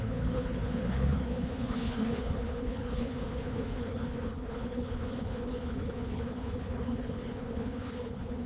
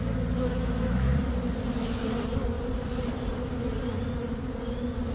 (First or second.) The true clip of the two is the second